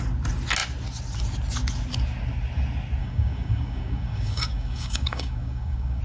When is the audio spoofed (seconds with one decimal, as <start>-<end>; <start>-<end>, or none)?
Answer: 3.0-6.0